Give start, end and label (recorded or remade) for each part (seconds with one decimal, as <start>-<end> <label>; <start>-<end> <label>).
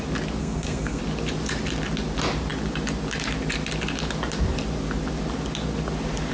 0.0-0.4 recorded; 0.4-1.0 remade; 1.0-6.3 recorded